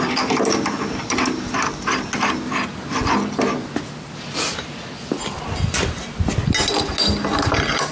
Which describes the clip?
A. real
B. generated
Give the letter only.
A